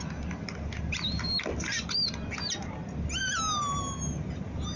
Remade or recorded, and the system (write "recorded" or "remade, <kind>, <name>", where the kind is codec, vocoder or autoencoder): recorded